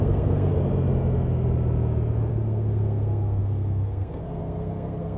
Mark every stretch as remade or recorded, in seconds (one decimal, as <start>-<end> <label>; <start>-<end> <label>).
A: 0.0-0.5 remade; 0.5-2.3 recorded; 2.3-5.2 remade